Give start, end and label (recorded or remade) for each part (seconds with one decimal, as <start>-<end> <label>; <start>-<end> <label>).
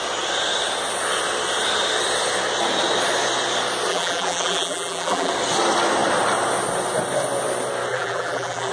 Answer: 0.0-3.9 recorded; 3.9-5.3 remade; 5.3-7.9 recorded; 7.9-8.7 remade